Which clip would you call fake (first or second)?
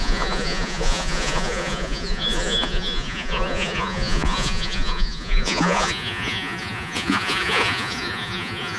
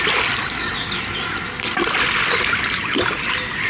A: first